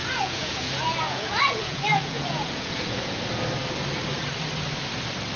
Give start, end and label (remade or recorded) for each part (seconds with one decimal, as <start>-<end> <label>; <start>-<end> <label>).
0.0-3.2 remade; 3.2-5.4 recorded